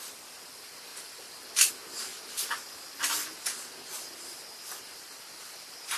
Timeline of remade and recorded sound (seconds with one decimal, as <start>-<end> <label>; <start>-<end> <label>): 0.0-0.9 recorded; 0.9-1.7 remade; 1.7-6.0 recorded